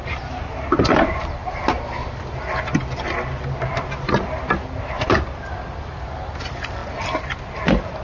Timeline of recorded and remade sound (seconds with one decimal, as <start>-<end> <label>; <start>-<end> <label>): 0.0-1.4 remade; 1.4-2.1 recorded; 2.1-6.8 remade; 6.8-7.6 recorded; 7.6-8.0 remade